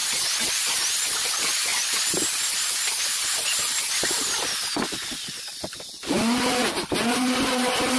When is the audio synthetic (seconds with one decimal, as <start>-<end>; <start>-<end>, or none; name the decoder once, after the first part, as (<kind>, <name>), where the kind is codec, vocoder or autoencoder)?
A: none